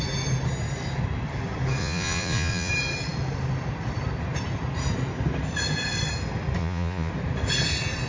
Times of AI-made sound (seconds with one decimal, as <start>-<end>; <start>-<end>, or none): 1.8-2.7; 6.6-7.1

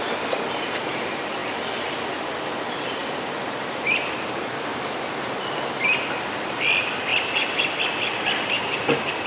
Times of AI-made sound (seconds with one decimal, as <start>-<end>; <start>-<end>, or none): none

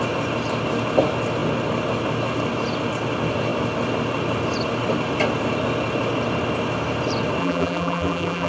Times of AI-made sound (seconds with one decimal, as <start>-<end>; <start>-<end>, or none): 7.4-8.5

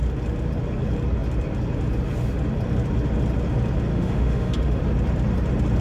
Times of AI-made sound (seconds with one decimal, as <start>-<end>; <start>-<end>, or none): 3.9-4.8

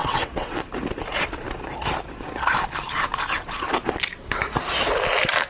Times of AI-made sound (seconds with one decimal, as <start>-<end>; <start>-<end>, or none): 0.0-0.7

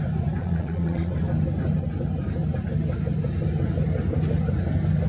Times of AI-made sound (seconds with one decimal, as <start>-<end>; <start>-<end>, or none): 0.4-1.1